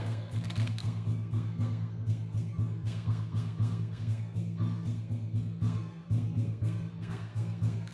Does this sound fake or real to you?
fake